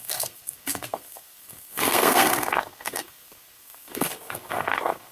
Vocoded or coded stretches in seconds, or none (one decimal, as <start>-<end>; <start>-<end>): 0.0-5.1